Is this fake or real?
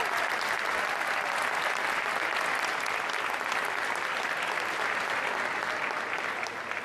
real